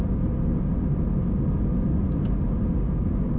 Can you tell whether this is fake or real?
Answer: real